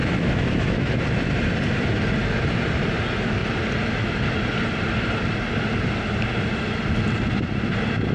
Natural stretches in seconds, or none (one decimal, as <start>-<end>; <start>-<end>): 0.9-8.1